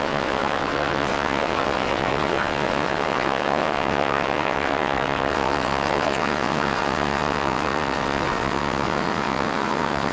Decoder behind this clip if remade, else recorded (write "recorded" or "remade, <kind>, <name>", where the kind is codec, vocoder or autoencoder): remade, vocoder, WaveNeXt